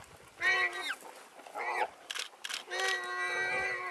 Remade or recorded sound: recorded